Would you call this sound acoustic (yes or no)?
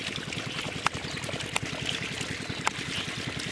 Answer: yes